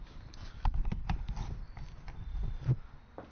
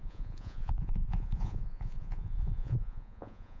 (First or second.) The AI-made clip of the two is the second